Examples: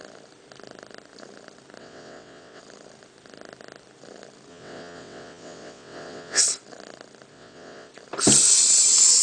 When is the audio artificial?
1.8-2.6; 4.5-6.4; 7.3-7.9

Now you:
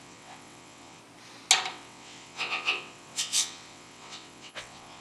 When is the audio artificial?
0.0-1.0; 1.7-5.0

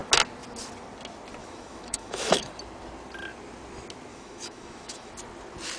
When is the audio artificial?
1.4-2.5; 4.1-5.1

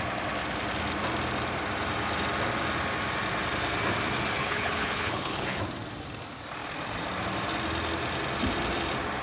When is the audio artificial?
4.4-5.6

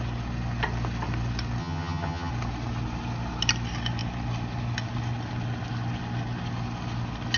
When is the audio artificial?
1.6-2.3